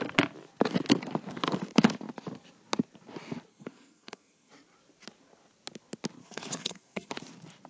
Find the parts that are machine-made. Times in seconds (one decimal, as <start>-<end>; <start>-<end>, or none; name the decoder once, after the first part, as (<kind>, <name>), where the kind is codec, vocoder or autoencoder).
3.5-4.5 (codec, SNAC); 6.2-7.1